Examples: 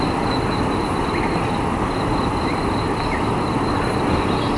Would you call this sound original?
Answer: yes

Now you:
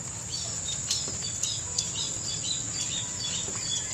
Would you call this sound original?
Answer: yes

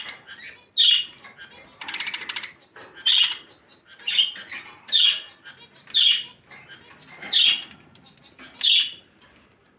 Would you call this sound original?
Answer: yes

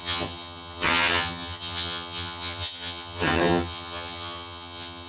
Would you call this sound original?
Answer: no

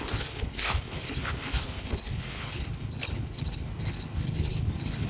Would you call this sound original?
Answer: no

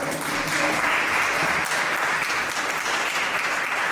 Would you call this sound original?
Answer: yes